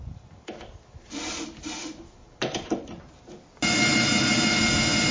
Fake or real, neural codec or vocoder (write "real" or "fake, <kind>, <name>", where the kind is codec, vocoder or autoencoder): real